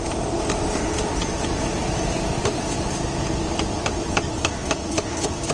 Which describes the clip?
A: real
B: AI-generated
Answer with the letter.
A